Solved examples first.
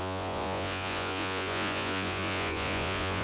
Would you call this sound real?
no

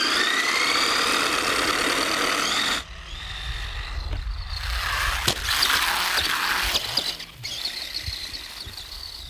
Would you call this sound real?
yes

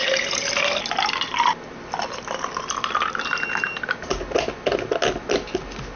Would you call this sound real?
yes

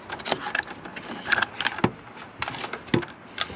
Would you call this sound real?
yes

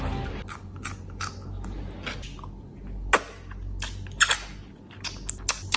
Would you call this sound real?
yes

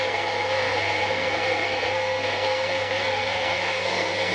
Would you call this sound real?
no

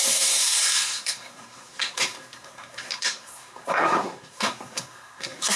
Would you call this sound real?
no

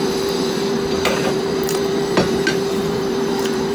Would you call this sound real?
no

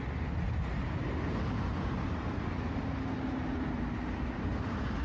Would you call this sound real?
yes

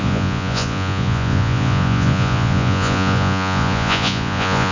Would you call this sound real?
no